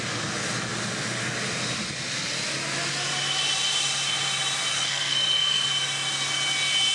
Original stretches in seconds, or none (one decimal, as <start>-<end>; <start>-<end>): 0.0-4.7; 5.7-6.9